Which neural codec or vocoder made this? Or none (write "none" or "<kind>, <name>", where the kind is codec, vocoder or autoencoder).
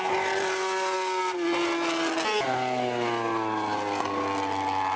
none